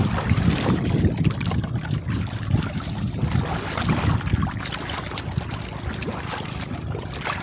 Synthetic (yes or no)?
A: no